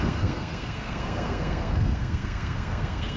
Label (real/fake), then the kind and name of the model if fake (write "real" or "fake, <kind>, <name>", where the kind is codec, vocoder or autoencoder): fake, codec, SNAC